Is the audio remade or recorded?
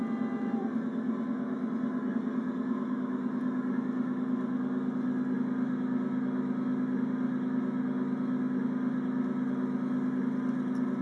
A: recorded